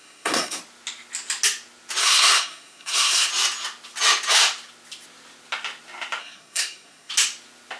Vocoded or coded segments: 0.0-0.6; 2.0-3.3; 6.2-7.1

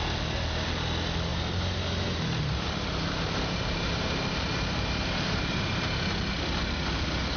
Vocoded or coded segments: 1.3-5.6

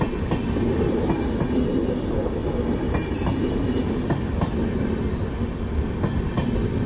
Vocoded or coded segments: none

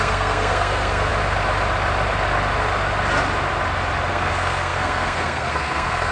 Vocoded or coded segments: 0.0-1.1; 4.1-6.1

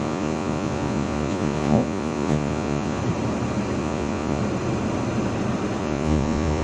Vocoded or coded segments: 0.0-3.0; 3.8-4.4; 5.8-6.6

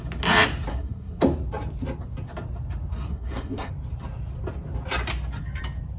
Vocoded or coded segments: 0.7-1.2; 3.1-3.7

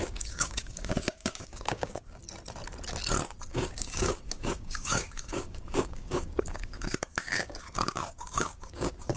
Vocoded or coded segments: 0.0-2.2; 3.5-9.2

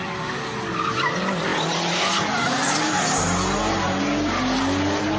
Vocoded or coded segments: none